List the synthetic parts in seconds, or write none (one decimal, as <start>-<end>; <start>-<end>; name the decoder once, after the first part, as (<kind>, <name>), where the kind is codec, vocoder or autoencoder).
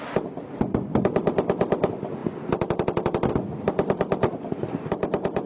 4.3-5.5 (vocoder, BigVGAN v2)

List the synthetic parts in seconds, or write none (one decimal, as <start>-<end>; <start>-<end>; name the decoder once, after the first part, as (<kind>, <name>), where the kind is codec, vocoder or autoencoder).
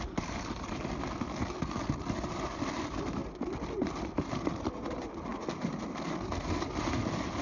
none